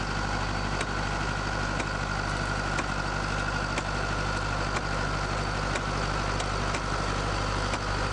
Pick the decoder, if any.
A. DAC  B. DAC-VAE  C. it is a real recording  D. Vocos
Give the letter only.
C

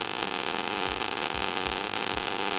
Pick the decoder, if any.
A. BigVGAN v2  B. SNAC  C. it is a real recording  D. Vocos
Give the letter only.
C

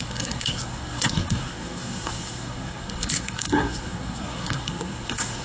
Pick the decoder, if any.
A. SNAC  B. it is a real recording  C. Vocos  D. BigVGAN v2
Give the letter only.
A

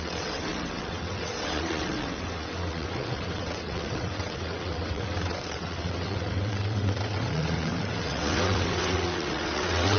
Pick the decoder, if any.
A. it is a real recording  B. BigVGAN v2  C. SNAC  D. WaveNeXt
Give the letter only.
D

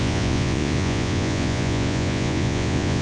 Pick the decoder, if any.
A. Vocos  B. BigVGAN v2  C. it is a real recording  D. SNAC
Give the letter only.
A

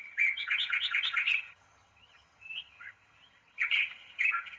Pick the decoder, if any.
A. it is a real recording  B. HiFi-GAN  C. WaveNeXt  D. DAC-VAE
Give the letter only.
B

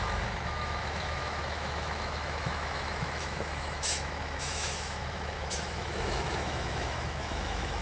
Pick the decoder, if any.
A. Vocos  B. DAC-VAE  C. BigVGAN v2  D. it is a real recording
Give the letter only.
B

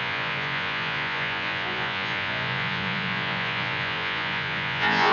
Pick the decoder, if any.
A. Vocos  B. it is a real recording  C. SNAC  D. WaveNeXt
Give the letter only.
A